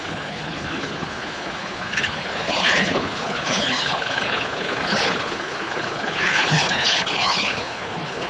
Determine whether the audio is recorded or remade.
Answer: remade